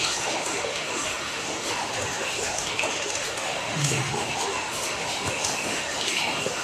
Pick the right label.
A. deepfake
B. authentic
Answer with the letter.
A